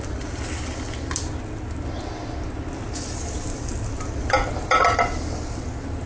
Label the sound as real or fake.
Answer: real